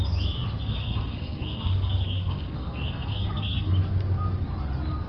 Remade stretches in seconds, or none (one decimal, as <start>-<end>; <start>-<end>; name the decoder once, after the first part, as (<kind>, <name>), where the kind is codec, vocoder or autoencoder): 0.6-3.7 (codec, SNAC)